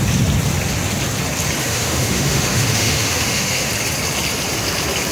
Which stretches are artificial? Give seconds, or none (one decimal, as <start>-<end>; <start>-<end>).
1.6-3.7